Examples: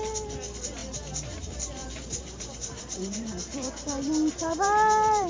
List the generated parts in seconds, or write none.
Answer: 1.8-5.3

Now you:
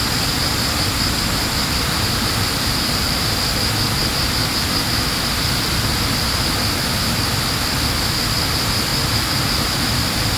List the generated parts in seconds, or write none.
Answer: 1.6-3.3; 8.9-10.4

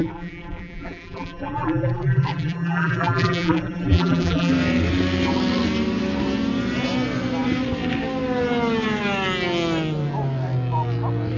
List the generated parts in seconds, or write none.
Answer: 0.0-4.5

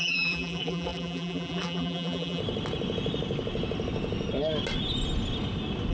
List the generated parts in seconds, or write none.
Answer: 0.0-2.4

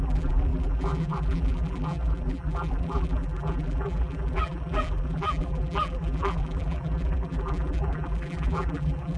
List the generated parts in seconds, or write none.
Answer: 0.0-9.2

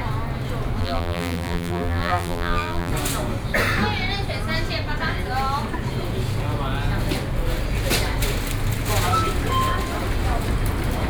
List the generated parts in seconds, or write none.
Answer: 0.8-2.9